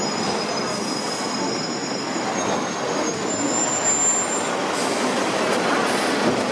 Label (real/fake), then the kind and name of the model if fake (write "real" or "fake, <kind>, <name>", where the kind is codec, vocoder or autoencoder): real